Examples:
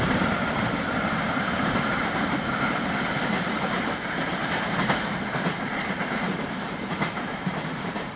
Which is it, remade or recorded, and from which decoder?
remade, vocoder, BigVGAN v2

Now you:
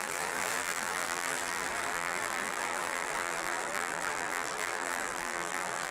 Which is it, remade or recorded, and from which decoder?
remade, vocoder, BigVGAN v2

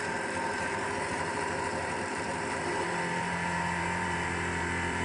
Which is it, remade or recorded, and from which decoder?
remade, vocoder, BigVGAN v2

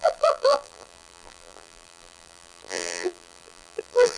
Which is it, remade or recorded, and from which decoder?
remade, vocoder, BigVGAN v2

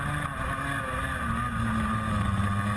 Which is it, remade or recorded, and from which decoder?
recorded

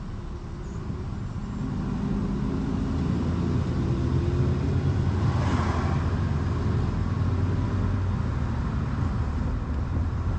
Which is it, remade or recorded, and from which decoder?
recorded